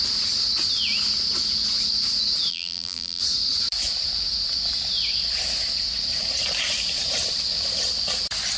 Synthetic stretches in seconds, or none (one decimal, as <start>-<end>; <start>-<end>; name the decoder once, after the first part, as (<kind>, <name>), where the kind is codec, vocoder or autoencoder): 2.5-3.2 (vocoder, BigVGAN v2)